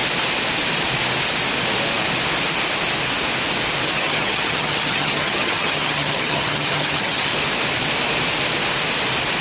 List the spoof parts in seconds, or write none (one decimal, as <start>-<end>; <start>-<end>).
3.9-7.3